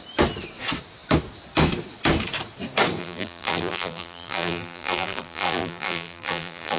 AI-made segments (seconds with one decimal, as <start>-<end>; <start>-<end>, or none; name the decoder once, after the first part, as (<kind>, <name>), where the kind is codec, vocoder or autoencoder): 3.0-6.8 (vocoder, BigVGAN v2)